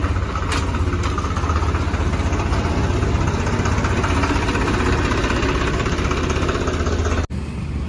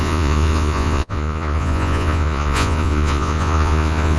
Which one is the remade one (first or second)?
second